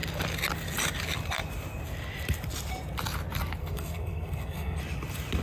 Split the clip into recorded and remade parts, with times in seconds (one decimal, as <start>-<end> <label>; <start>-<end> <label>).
0.0-3.6 recorded; 3.6-4.8 remade; 4.8-5.4 recorded